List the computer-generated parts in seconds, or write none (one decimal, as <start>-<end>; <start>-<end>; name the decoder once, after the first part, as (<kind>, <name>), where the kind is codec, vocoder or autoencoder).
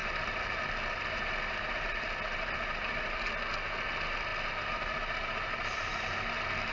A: none